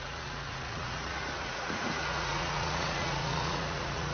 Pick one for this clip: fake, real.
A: fake